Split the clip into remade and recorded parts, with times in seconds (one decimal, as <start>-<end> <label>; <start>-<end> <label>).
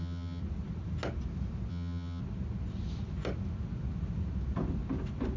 0.0-0.4 remade; 0.4-1.7 recorded; 1.7-2.2 remade; 2.2-5.4 recorded